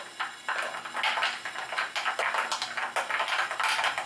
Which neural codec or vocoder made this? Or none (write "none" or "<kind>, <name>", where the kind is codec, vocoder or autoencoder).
none